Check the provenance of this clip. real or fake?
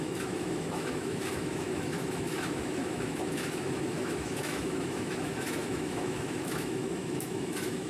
fake